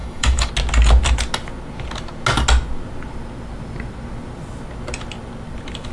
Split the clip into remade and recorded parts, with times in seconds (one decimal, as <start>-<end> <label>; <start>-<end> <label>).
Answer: 0.0-0.5 remade; 0.5-5.9 recorded